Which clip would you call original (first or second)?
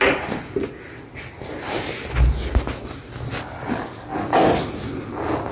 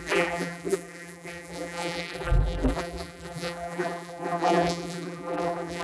first